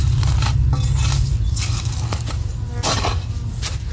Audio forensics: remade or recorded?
recorded